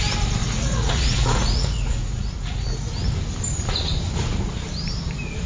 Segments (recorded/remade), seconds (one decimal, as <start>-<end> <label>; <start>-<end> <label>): 0.0-0.4 recorded; 0.4-2.9 remade; 2.9-5.5 recorded